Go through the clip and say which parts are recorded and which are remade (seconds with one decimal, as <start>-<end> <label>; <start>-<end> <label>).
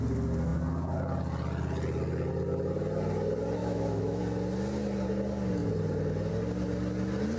0.0-3.6 recorded; 3.6-4.2 remade; 4.2-7.4 recorded